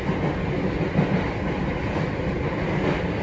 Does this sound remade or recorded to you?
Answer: recorded